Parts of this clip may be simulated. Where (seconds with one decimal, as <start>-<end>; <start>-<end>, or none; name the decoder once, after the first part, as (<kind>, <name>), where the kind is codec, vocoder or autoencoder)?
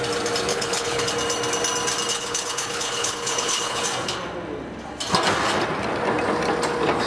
0.5-1.1 (codec, HILCodec); 2.1-3.8